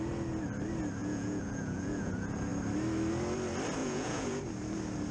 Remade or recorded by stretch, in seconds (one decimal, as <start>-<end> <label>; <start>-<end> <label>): 0.0-1.0 recorded; 1.0-2.1 remade; 2.1-3.8 recorded; 3.8-4.4 remade; 4.4-5.1 recorded